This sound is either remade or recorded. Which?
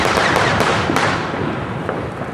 recorded